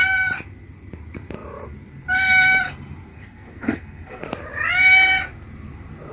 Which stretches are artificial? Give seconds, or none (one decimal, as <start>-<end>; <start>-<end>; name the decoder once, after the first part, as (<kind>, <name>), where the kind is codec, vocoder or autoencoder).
3.1-4.2 (codec, SNAC)